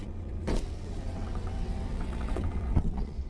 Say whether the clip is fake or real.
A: fake